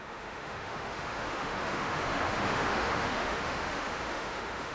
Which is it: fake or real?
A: fake